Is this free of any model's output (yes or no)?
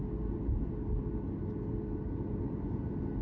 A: yes